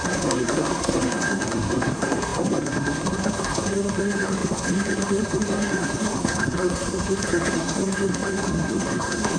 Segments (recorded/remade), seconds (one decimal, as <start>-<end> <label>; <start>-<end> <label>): 0.0-9.4 remade